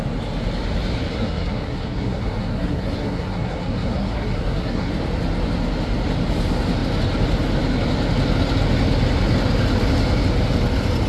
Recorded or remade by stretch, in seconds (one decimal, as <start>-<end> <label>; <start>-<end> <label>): 0.0-1.1 recorded; 1.1-4.9 remade; 4.9-11.1 recorded